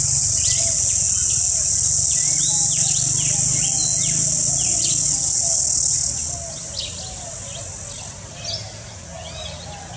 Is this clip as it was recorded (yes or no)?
yes